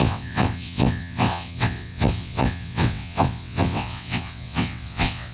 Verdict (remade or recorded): remade